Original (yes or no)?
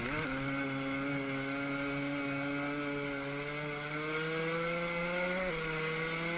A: yes